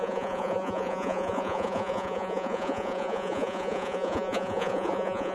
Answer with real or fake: fake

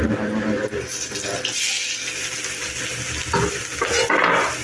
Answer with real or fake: real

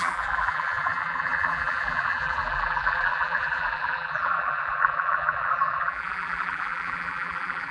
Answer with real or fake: fake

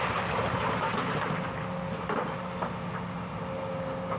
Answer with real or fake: real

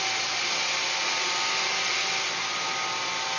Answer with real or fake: real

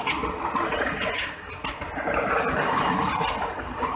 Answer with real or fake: real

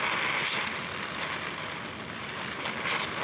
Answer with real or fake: real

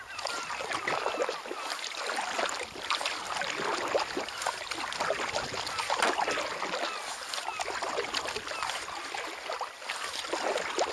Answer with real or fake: real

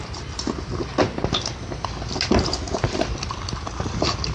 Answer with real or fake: real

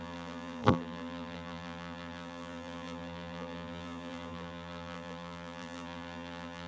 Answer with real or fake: fake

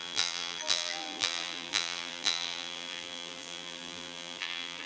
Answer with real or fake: fake